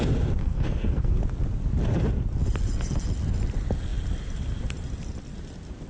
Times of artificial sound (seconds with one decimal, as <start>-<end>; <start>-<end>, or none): 0.4-1.2